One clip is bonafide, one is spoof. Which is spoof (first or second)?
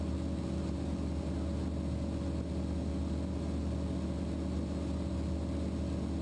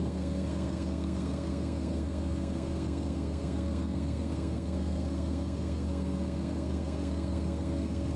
second